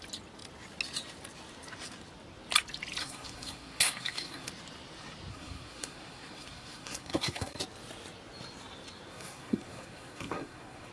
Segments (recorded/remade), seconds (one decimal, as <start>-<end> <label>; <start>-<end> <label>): 0.0-3.0 recorded; 3.0-4.5 remade; 4.5-5.3 recorded; 5.3-7.6 remade; 7.6-9.1 recorded; 9.1-10.9 remade